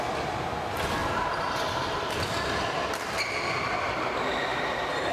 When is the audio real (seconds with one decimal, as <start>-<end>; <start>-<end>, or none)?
0.0-1.0; 4.1-4.5